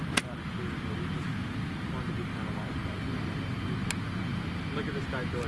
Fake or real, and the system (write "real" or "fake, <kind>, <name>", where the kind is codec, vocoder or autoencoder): real